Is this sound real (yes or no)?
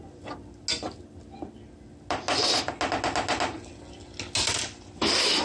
yes